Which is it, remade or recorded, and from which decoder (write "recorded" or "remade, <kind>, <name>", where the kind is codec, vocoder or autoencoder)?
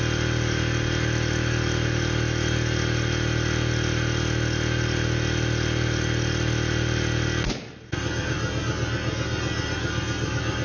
recorded